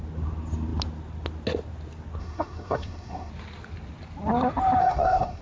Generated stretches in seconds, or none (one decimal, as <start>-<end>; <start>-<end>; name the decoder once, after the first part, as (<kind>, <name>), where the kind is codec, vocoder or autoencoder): 2.2-3.3 (codec, SNAC); 4.8-5.4